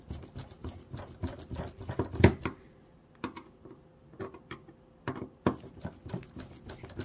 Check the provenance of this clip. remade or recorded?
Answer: recorded